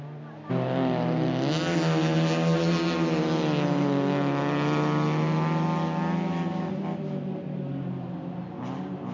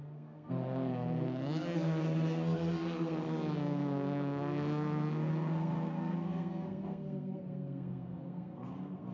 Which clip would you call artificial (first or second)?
second